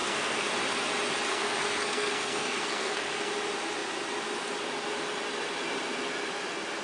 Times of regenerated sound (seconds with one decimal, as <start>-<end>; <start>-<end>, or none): 0.0-0.5; 1.3-3.3